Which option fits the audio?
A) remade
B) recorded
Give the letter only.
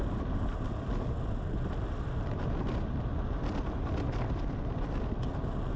A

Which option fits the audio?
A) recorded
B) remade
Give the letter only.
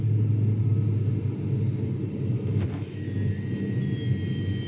A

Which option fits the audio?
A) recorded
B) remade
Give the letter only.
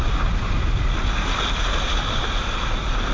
A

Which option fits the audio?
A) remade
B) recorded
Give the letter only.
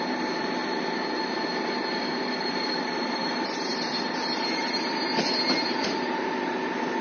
B